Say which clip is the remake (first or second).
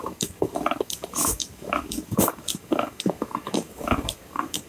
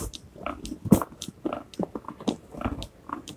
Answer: first